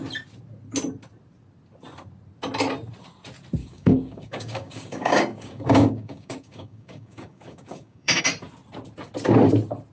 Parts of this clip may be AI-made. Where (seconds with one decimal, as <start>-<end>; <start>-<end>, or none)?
3.6-8.2